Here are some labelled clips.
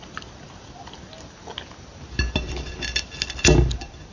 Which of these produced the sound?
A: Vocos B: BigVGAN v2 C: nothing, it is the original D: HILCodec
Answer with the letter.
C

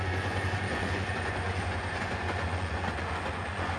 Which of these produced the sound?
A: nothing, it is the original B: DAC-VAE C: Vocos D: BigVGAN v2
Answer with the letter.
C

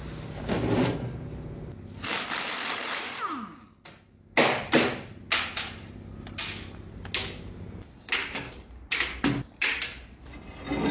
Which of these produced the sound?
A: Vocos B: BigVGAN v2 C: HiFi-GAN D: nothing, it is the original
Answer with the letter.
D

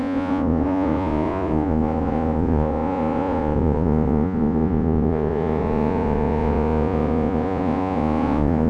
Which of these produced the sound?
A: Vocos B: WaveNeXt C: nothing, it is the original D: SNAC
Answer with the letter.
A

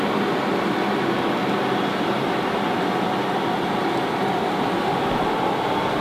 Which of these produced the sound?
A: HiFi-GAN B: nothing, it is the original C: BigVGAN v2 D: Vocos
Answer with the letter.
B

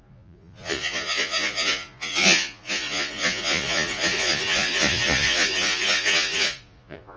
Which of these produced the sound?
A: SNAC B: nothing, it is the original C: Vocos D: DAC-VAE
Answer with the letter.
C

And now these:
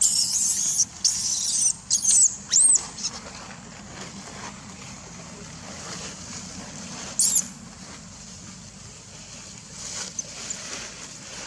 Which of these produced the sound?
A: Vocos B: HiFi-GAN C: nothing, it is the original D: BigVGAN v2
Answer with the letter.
C